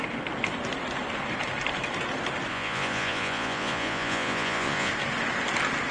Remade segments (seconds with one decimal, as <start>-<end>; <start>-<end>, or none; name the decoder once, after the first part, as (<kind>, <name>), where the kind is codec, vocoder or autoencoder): 2.5-4.9 (vocoder, Vocos)